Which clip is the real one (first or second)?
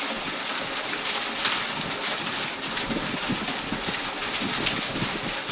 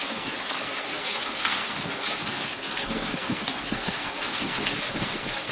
first